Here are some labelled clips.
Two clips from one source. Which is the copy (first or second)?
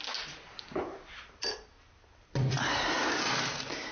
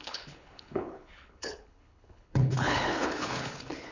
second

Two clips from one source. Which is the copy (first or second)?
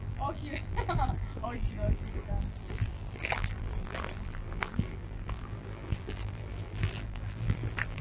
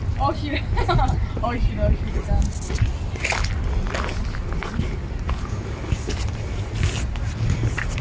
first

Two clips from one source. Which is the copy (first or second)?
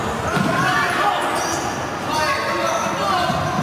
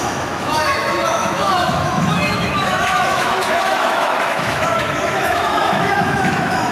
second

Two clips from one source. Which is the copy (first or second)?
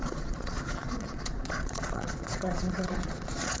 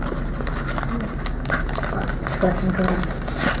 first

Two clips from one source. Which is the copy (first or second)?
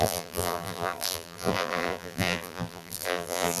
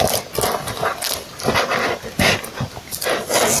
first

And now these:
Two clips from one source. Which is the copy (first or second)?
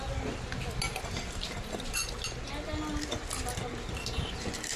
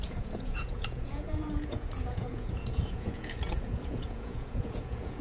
second